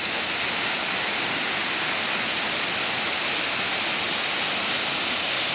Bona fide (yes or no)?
yes